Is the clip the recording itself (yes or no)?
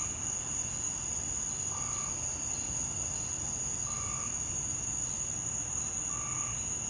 yes